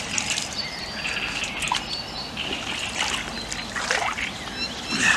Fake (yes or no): no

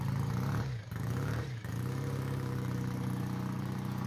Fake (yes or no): yes